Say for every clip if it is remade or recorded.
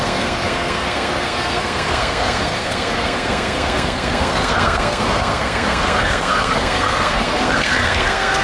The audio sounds remade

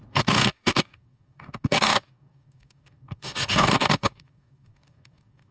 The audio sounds remade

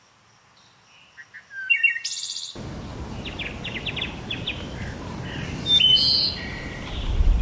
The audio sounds recorded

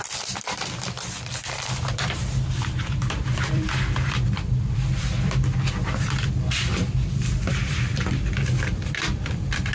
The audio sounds remade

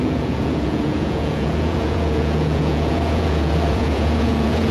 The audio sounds remade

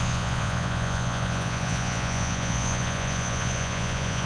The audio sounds remade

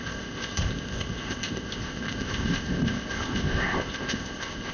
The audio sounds remade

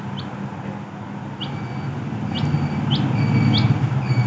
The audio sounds recorded